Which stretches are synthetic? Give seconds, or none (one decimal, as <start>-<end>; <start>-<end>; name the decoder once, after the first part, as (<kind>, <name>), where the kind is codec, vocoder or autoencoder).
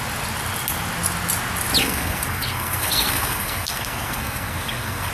1.8-5.1 (codec, SNAC)